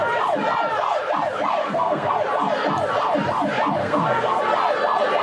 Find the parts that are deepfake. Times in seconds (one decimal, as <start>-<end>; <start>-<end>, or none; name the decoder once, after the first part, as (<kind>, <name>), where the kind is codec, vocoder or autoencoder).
1.6-2.1 (codec, SNAC); 3.8-4.4